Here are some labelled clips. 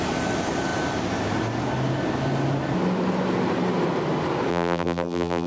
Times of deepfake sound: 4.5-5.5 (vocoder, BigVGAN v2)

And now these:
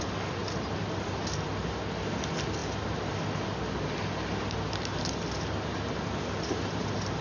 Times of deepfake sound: 0.4-1.1 (vocoder, BigVGAN v2)

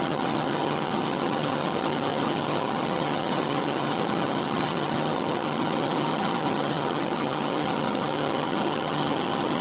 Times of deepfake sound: 0.0-9.6 (vocoder, HiFi-GAN)

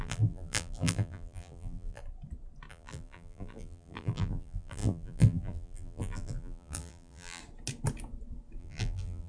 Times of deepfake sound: 0.0-2.0 (vocoder, BigVGAN v2); 2.7-7.4; 8.6-9.3

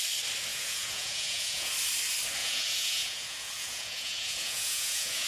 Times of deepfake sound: 0.5-1.7 (vocoder, Vocos); 2.4-5.3